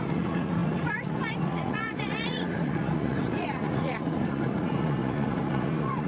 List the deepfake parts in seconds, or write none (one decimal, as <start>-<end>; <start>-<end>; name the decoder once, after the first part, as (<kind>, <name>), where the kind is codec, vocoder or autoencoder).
0.0-6.1 (vocoder, Vocos)

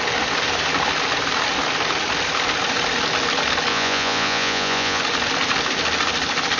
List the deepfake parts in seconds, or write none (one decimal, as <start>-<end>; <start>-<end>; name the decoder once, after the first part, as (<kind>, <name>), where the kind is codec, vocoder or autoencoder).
3.7-5.0 (vocoder, Vocos)

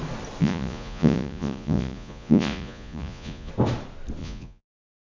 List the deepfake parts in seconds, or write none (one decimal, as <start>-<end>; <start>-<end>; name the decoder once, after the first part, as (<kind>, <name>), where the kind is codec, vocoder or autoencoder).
0.4-3.5 (vocoder, Vocos); 4.2-5.2

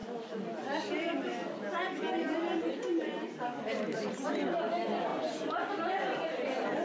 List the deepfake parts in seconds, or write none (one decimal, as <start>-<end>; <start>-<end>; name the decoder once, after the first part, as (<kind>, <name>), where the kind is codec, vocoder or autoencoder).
none

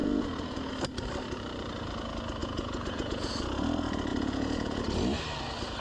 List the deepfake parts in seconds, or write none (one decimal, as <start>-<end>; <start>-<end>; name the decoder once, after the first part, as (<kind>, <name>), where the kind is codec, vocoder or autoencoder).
0.0-0.7 (vocoder, Vocos); 2.4-3.3; 4.1-4.8